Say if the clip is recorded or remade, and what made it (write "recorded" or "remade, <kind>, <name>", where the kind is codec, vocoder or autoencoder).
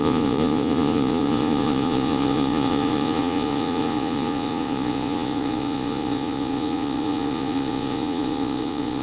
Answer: remade, vocoder, Vocos